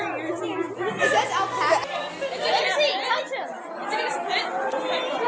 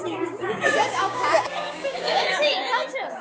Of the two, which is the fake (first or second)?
second